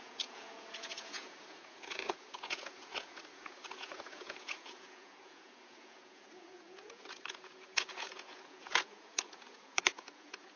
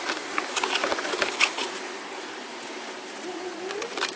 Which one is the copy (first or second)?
first